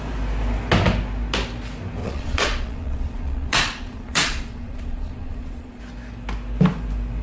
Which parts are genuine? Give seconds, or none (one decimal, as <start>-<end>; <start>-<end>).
0.0-2.0; 5.8-7.2